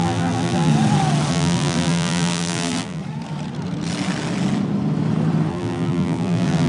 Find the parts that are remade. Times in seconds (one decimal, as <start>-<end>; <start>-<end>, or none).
0.0-0.7; 1.3-3.0; 5.5-6.7